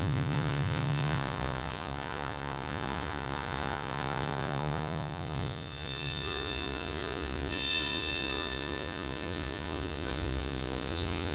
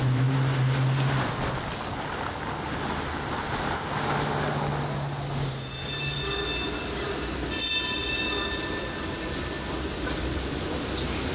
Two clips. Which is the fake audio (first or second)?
first